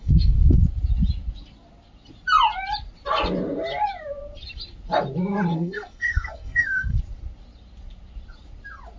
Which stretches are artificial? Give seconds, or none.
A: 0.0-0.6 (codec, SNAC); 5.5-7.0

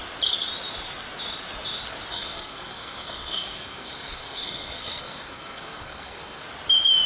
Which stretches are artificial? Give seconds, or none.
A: 2.1-6.4 (codec, SNAC)

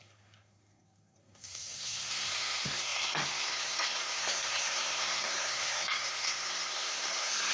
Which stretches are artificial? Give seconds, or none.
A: 0.0-7.5 (codec, SNAC)

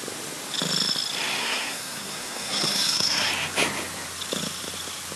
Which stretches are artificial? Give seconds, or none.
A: 1.4-3.3 (codec, SNAC)

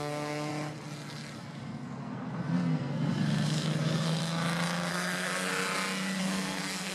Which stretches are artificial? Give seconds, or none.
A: 0.0-0.5 (codec, SNAC); 1.4-4.2; 4.9-5.5; 6.2-6.9